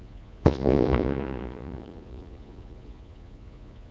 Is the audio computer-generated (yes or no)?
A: yes